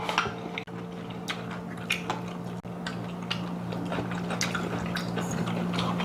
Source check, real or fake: real